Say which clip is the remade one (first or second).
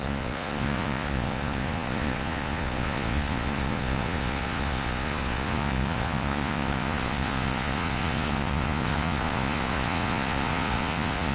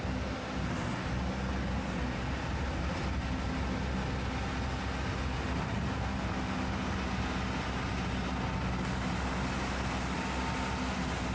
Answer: first